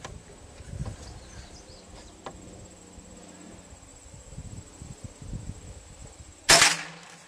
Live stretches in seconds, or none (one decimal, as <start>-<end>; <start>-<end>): 0.0-3.9; 4.6-6.0; 6.6-7.3